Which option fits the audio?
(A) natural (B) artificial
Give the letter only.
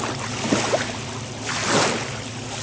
A